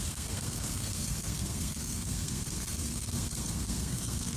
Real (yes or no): no